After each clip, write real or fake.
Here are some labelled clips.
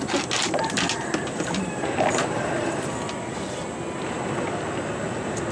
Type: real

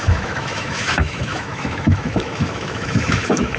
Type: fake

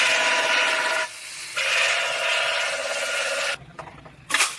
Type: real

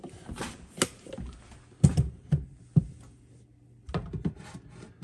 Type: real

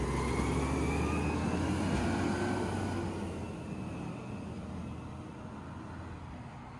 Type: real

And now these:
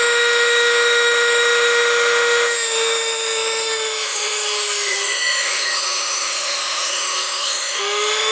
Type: fake